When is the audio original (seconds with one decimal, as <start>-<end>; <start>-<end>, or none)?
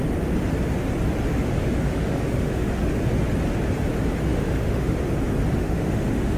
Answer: 0.0-1.3; 2.7-4.3; 5.0-5.6